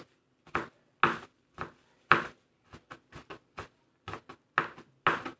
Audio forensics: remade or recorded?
recorded